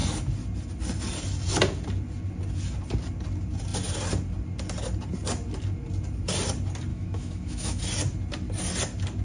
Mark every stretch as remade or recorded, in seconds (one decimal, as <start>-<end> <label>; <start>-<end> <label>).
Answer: 0.0-6.9 recorded; 6.9-7.8 remade; 7.8-9.2 recorded

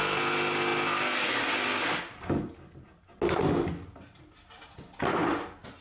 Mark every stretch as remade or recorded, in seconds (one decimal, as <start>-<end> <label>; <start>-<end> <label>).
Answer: 0.0-5.8 recorded

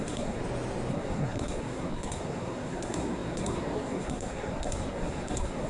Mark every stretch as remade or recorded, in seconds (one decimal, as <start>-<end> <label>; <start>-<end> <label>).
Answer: 0.0-0.4 remade; 0.4-0.9 recorded; 0.9-5.7 remade

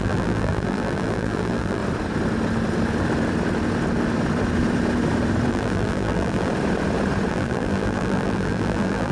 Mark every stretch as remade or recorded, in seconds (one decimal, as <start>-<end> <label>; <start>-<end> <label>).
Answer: 0.0-1.8 remade; 1.8-5.5 recorded; 5.5-6.5 remade; 6.5-7.3 recorded; 7.3-9.1 remade

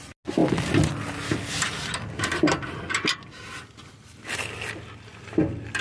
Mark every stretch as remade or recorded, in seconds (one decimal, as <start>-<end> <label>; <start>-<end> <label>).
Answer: 0.0-5.8 recorded

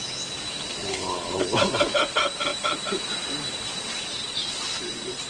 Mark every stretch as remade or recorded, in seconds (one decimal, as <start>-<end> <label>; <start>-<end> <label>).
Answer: 0.0-0.8 recorded; 0.8-1.6 remade; 1.6-5.3 recorded